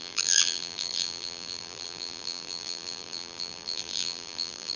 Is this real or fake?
fake